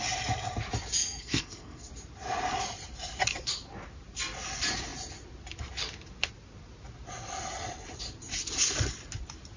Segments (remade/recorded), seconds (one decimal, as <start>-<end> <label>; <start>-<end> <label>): 0.0-1.0 recorded; 1.0-1.9 remade; 1.9-9.6 recorded